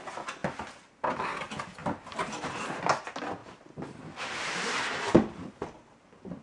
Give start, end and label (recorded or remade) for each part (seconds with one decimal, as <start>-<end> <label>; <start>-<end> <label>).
0.0-3.4 recorded; 3.4-6.0 remade; 6.0-6.4 recorded